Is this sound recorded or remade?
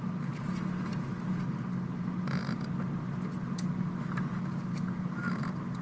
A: recorded